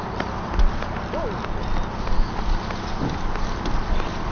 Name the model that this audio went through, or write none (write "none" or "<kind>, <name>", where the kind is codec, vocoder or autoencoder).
none